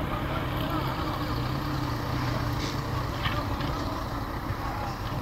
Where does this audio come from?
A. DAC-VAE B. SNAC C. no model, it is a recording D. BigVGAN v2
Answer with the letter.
C